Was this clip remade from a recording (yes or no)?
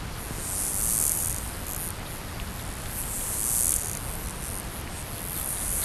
no